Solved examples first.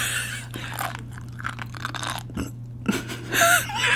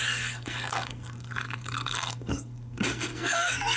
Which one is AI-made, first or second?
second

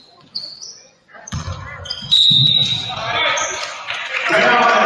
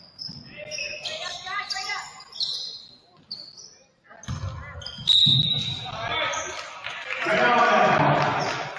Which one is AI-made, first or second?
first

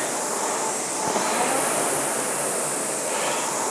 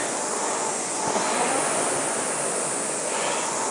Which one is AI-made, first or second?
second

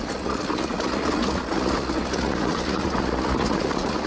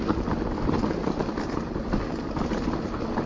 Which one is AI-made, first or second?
first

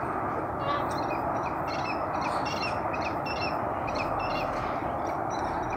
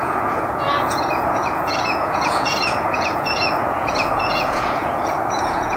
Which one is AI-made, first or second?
second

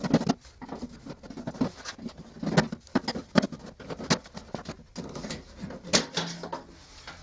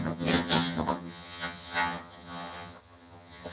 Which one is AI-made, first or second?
second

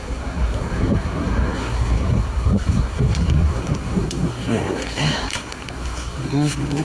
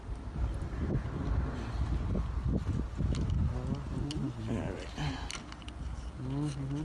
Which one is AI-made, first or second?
first